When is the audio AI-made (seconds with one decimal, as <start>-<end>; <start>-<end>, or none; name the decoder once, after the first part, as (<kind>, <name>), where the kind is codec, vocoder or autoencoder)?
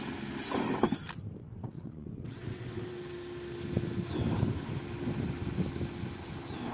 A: 1.4-2.9 (vocoder, WaveNeXt)